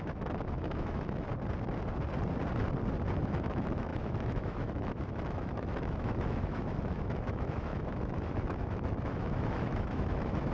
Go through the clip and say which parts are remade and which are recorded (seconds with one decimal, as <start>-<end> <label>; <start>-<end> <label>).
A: 0.0-1.3 remade; 1.3-3.2 recorded; 3.2-10.5 remade

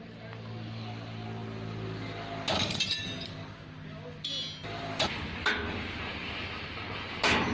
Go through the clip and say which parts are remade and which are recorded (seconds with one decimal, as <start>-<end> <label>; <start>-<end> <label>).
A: 0.0-7.5 recorded

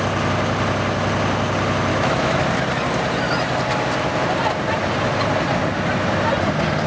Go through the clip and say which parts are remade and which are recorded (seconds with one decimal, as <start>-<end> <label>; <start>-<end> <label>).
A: 0.0-1.9 recorded; 1.9-2.4 remade; 2.4-6.9 recorded